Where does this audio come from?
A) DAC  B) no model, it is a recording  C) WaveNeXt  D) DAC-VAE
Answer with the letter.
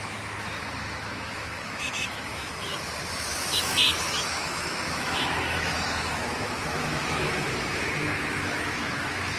D